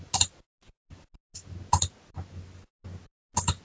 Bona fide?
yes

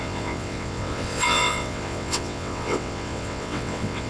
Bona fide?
no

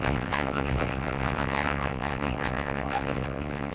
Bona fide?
no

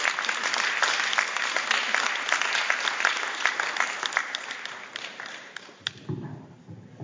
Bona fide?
yes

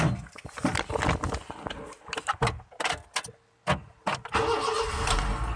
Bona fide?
yes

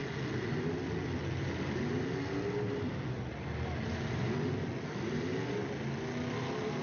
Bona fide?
yes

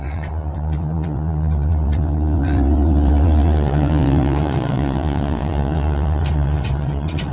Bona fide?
no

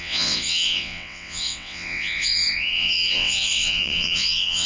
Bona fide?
no